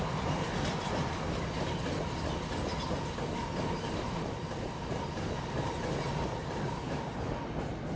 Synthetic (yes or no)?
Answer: no